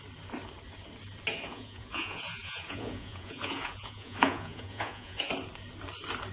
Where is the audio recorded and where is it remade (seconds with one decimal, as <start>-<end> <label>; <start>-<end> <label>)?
0.0-1.5 recorded; 1.5-5.3 remade; 5.3-6.3 recorded